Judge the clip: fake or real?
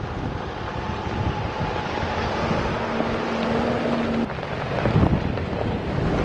real